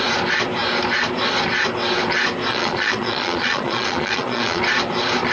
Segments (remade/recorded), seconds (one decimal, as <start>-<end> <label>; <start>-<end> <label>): 0.0-2.5 recorded; 2.5-4.6 remade; 4.6-5.3 recorded